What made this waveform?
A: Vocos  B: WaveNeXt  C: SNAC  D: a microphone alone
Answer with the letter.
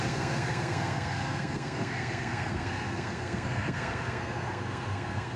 C